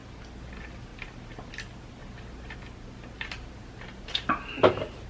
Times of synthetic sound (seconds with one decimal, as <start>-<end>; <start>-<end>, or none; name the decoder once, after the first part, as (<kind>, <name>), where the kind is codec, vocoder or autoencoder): 0.0-0.5 (vocoder, BigVGAN v2); 0.9-1.5; 2.0-2.6